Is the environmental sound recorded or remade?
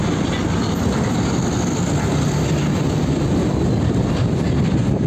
recorded